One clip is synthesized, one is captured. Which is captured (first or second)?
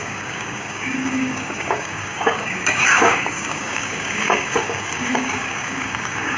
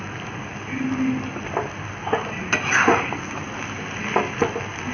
second